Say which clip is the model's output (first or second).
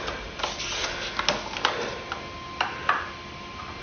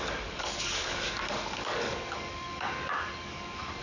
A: second